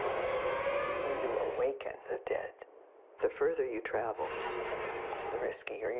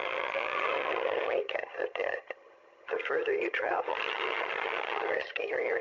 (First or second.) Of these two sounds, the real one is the first